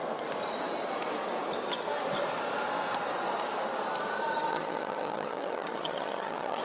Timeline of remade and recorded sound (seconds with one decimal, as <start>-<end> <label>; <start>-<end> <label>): 0.0-4.5 recorded; 4.5-6.6 remade